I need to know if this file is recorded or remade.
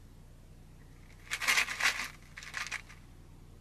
recorded